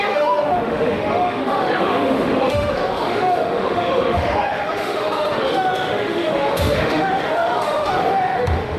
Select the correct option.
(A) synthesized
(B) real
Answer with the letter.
A